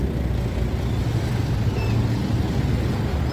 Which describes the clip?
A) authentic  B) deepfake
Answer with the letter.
A